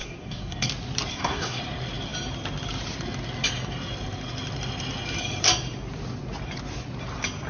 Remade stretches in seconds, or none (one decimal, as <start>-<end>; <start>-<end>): 0.0-0.7; 1.1-1.6